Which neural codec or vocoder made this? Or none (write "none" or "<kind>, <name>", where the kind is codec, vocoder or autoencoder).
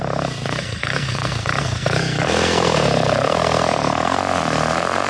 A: codec, SNAC